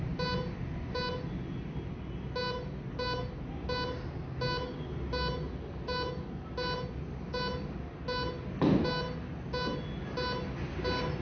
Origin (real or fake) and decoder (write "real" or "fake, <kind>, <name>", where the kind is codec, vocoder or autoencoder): real